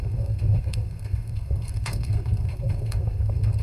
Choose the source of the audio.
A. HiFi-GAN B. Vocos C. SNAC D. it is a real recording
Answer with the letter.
C